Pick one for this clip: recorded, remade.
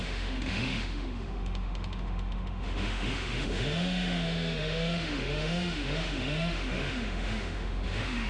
remade